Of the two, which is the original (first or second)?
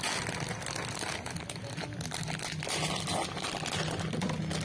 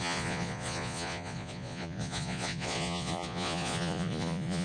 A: first